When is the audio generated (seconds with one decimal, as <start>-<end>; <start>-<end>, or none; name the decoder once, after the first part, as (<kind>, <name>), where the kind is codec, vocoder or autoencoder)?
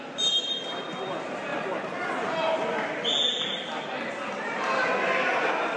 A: none